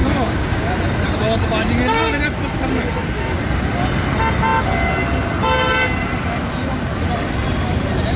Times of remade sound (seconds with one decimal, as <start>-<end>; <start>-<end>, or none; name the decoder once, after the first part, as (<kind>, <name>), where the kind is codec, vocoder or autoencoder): 0.0-0.7 (codec, DAC)